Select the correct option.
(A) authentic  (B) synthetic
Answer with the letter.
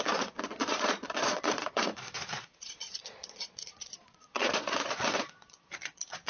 B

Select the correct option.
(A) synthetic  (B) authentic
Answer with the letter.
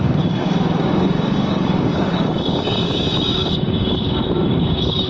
A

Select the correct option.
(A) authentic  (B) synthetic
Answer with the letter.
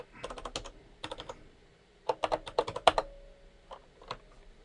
A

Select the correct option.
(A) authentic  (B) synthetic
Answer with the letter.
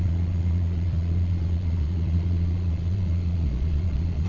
B